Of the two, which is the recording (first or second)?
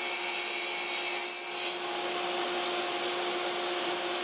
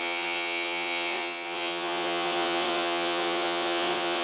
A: first